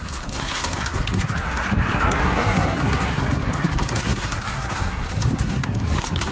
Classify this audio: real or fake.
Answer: fake